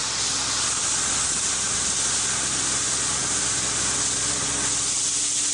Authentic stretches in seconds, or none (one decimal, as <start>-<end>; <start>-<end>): 0.0-5.5